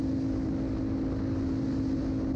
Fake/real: real